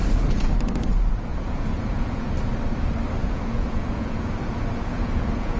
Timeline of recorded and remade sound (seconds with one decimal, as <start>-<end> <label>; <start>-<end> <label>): 0.0-1.3 recorded; 1.3-2.3 remade; 2.3-3.2 recorded; 3.2-5.6 remade